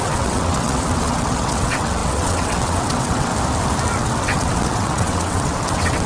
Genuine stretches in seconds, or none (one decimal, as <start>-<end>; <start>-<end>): 3.3-4.0